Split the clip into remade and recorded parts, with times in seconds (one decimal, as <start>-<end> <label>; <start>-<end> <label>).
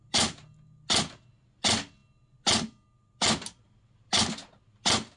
0.0-5.2 recorded